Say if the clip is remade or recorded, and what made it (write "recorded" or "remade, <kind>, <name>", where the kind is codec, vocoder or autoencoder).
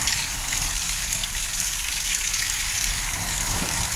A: remade, codec, DAC